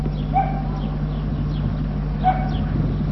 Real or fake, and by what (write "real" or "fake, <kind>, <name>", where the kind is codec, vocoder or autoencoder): real